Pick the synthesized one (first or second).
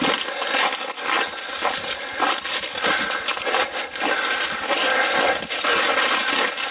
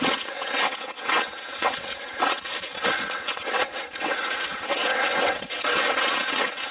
second